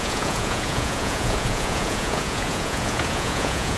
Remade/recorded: remade